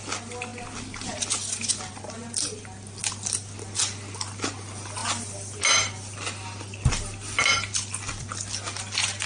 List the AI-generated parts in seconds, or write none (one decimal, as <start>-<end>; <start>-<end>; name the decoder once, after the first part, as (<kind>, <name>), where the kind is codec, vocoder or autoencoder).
none